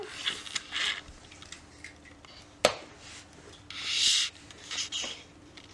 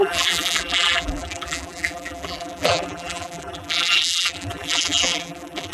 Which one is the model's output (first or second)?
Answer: second